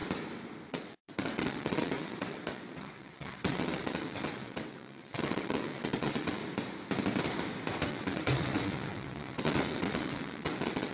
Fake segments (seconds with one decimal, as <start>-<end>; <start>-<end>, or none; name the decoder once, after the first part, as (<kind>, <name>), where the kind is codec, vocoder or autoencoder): 0.7-6.4 (vocoder, WaveNeXt); 7.9-10.9